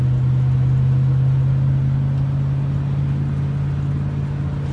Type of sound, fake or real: real